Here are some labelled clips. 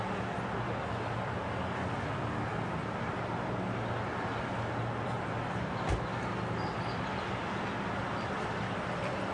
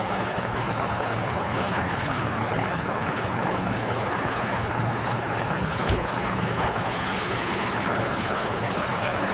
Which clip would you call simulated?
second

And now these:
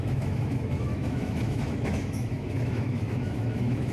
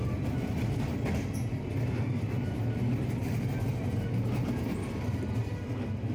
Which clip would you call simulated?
first